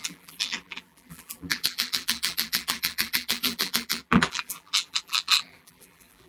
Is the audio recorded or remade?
remade